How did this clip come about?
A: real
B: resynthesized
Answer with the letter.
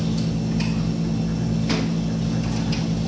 A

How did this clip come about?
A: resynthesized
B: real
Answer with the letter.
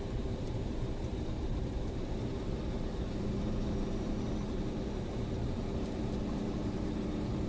A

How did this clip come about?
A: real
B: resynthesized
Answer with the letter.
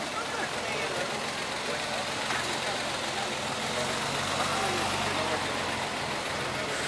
A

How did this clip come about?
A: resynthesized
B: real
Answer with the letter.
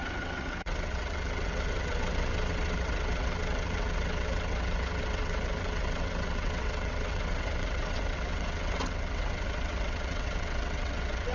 A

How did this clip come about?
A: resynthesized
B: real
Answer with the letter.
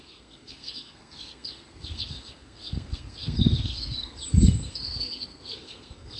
A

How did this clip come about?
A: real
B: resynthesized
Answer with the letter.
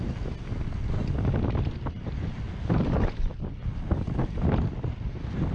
A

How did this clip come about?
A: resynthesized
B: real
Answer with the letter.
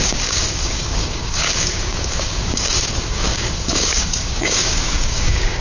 A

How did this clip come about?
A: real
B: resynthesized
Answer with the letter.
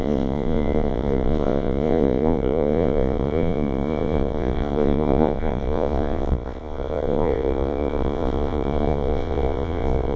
B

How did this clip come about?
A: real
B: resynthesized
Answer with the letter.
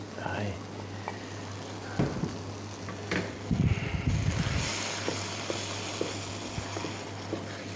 A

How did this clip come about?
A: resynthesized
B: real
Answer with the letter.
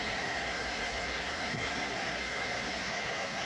A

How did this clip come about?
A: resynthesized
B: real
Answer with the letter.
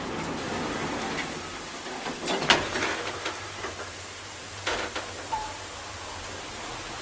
B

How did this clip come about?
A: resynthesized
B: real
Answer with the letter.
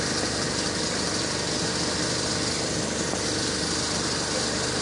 B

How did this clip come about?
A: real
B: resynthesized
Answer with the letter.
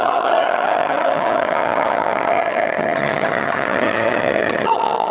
B